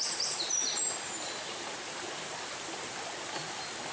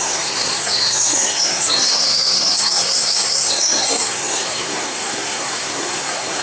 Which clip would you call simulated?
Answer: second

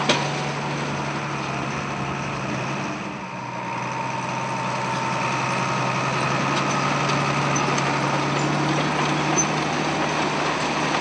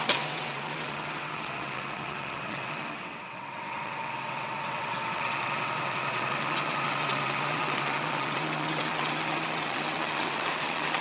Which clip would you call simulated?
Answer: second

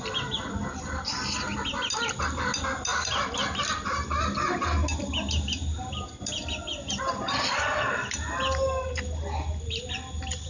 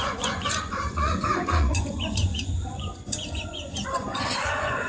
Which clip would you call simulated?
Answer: second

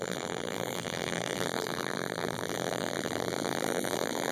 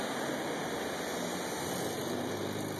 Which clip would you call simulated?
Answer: first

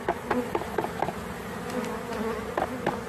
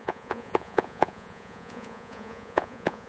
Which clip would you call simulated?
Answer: second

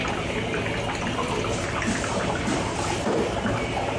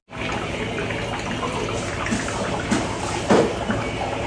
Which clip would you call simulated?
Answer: first